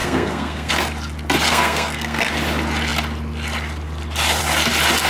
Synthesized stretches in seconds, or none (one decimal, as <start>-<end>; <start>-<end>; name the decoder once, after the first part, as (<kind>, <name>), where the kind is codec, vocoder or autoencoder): 0.0-0.7 (codec, SNAC); 1.5-2.3